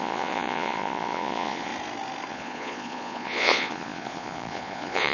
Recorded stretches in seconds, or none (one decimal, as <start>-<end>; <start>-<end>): 1.7-2.3

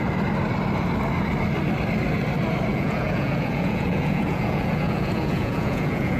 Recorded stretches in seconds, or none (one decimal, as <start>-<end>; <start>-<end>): 0.0-2.7

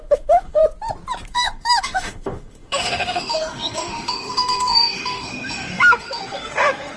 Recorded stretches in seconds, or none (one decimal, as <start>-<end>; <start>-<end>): 0.6-1.3

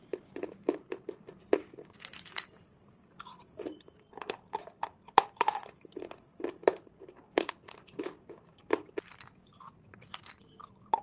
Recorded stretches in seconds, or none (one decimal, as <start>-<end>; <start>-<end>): none

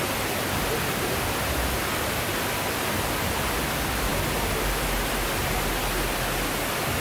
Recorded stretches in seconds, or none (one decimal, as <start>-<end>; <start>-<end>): 0.0-7.0